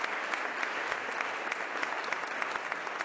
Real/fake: real